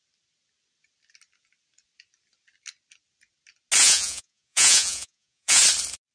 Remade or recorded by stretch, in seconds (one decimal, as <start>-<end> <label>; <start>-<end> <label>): 0.0-3.8 recorded; 3.8-5.6 remade; 5.6-6.1 recorded